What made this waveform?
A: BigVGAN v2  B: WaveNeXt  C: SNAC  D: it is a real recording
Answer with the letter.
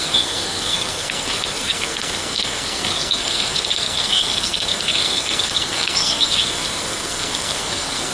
C